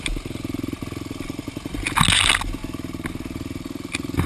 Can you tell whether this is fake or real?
real